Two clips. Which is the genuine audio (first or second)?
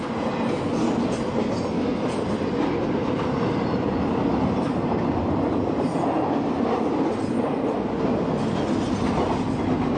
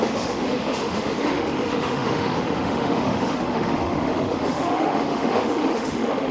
first